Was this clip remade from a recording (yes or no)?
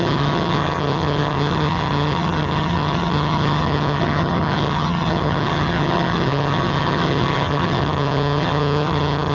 yes